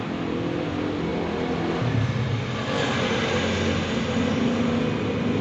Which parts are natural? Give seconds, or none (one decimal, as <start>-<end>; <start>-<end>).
0.0-5.4